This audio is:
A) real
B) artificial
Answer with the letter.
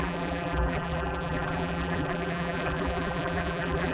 B